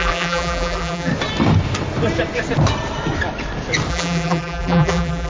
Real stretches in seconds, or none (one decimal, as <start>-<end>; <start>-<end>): 1.1-3.9